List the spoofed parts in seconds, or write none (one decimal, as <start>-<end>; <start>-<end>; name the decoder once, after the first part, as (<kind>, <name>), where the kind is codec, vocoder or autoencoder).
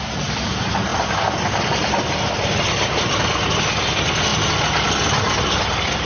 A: none